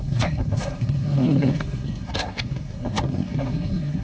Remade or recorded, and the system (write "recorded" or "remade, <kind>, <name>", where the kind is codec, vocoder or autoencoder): remade, codec, SNAC